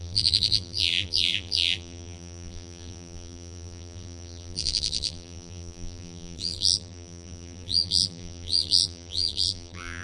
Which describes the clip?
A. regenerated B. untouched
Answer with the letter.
A